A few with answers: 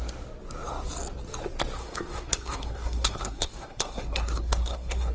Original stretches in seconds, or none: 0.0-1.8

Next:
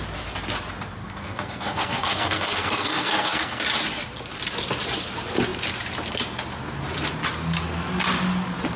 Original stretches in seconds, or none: 0.0-1.0; 3.6-8.8

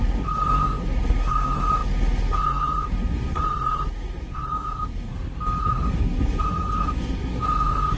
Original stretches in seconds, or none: 5.1-5.6

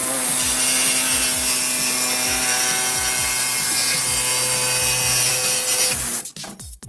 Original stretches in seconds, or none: 0.0-6.9

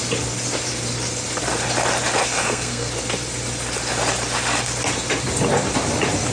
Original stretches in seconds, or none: 0.0-2.3; 2.9-6.3

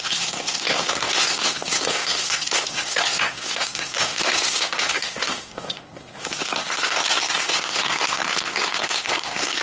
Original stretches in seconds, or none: none

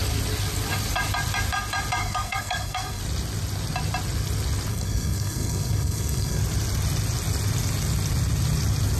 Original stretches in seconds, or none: 0.0-2.0; 3.0-4.7; 6.4-9.0